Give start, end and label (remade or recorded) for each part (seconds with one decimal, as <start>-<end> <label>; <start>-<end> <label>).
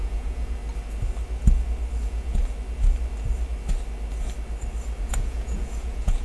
0.0-0.6 remade; 0.6-2.0 recorded; 2.0-2.4 remade; 2.4-5.0 recorded; 5.0-6.2 remade